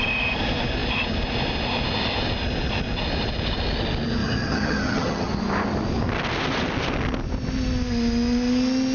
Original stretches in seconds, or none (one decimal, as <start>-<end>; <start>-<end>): 0.0-4.2; 5.3-8.9